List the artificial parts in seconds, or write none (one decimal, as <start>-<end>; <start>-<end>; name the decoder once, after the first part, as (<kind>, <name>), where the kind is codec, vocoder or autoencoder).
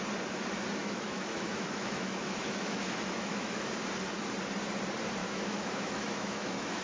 0.8-3.7 (autoencoder, DAC-VAE); 5.2-6.8